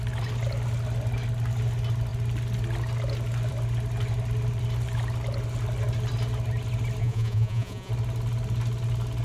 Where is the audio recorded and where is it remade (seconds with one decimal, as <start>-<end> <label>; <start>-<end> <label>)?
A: 0.0-7.0 recorded; 7.0-7.9 remade; 7.9-9.2 recorded